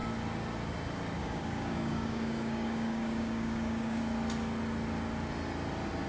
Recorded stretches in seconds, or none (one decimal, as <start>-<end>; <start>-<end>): 0.0-1.2; 4.0-6.1